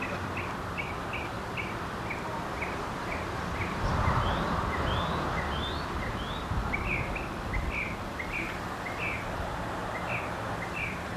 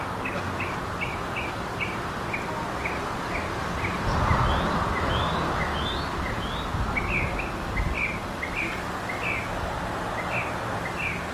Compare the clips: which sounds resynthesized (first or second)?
first